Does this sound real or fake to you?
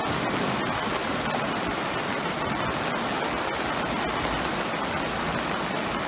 real